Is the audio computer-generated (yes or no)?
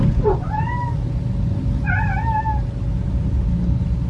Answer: no